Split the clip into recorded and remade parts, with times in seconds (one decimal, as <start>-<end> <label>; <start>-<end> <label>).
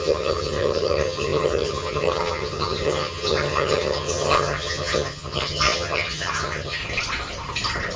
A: 0.0-6.8 remade; 6.8-8.0 recorded